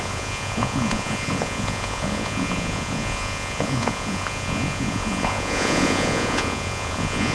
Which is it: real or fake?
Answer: fake